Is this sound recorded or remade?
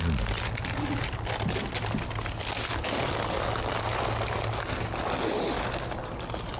recorded